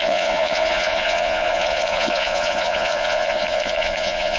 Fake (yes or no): yes